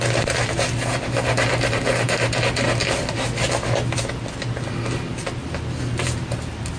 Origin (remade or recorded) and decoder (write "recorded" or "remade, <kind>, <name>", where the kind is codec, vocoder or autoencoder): recorded